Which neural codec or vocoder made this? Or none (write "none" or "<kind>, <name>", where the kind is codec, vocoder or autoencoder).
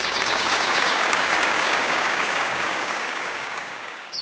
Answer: codec, DAC